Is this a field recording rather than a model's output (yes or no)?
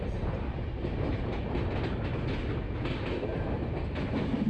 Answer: yes